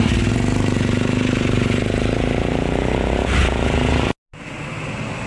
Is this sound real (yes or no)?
yes